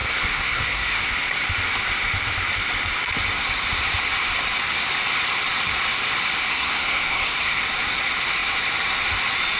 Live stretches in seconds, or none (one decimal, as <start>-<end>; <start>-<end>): 1.0-6.5; 7.6-9.6